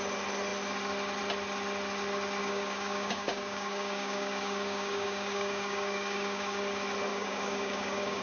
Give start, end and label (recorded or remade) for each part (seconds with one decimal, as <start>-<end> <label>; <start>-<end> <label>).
0.0-2.4 recorded; 2.4-6.6 remade; 6.6-7.1 recorded; 7.1-8.2 remade